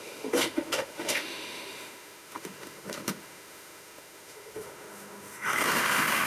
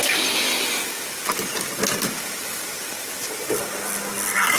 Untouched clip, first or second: second